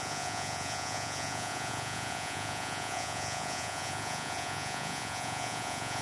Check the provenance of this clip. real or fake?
fake